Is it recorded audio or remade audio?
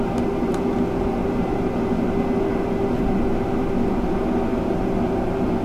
recorded